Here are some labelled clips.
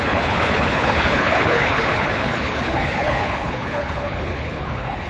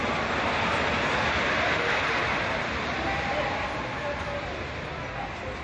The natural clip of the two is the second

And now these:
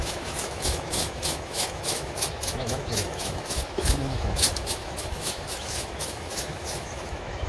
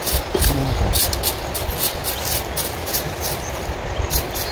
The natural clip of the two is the second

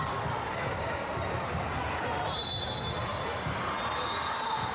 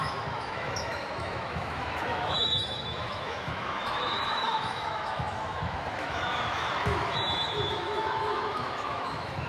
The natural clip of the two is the first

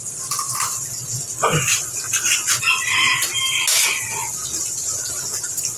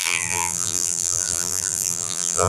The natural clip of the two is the first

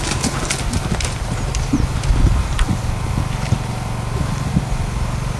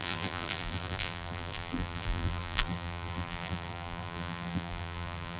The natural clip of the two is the first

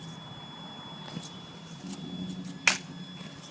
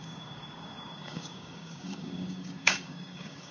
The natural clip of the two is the first